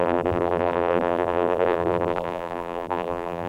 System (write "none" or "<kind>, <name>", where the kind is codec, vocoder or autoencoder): vocoder, BigVGAN v2